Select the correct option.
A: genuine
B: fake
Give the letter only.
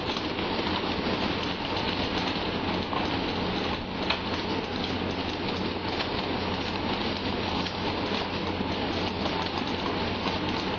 A